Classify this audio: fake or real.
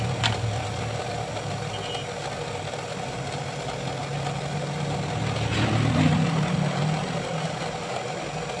real